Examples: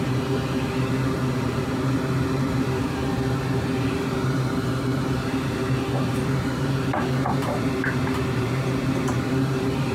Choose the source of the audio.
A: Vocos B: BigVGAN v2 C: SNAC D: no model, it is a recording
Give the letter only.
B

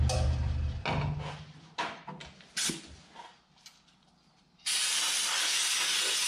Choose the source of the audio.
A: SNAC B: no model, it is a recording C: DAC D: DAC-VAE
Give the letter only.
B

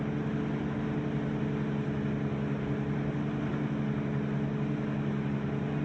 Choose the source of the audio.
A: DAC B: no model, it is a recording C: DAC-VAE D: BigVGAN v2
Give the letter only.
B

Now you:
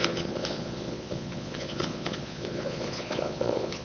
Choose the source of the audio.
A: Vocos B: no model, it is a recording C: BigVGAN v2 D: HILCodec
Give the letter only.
A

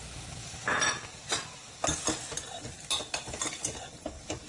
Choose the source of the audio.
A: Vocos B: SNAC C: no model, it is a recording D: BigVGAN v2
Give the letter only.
C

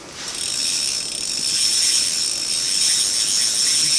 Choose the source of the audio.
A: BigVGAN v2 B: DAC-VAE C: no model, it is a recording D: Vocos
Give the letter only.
C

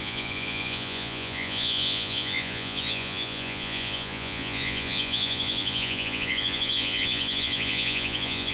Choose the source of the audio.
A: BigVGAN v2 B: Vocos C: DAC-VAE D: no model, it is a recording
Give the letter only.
B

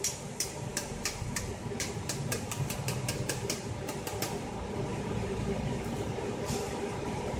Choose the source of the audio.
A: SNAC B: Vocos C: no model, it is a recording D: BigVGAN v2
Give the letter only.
D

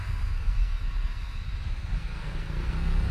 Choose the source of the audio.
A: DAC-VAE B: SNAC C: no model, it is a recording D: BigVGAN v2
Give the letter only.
B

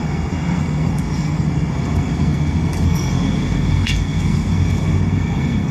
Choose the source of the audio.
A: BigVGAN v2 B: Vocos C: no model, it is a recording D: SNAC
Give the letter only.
D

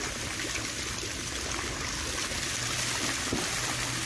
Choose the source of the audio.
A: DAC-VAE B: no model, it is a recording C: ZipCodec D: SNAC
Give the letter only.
B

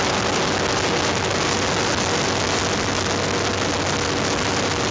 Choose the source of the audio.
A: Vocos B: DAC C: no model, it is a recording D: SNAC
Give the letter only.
C